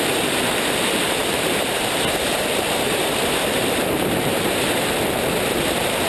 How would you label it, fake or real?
fake